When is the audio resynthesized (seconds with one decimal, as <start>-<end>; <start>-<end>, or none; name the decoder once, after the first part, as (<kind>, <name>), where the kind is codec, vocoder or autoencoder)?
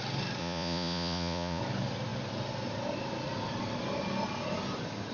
0.4-1.6 (vocoder, Vocos)